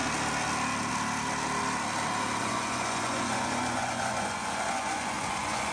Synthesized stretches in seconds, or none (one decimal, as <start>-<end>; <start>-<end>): 2.4-5.7